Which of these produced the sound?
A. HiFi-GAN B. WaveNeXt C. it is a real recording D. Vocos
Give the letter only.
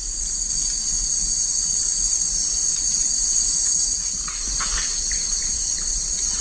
C